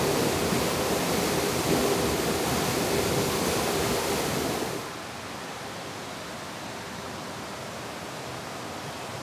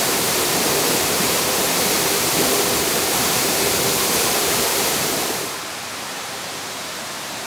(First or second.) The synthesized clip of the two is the second